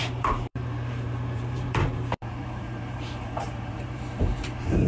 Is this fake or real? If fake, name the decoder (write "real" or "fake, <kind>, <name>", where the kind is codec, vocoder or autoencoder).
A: fake, vocoder, BigVGAN v2